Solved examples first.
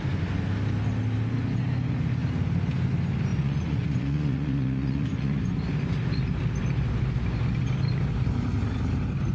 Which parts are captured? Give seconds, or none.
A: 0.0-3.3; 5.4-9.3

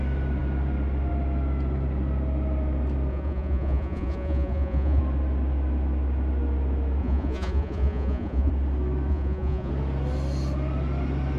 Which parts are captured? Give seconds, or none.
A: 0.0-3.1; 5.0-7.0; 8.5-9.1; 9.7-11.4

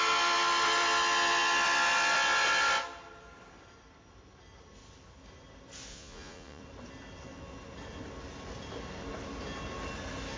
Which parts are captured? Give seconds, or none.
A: 0.0-5.9; 6.6-10.4